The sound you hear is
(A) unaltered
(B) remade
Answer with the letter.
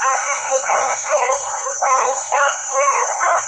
B